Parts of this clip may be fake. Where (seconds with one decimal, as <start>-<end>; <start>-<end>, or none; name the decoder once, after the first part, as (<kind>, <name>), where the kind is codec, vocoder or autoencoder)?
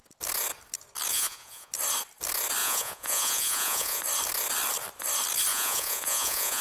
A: 1.1-1.7 (vocoder, Vocos); 2.6-4.0; 5.5-6.6